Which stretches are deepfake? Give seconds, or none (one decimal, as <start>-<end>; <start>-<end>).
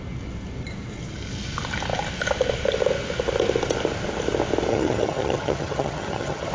4.7-6.5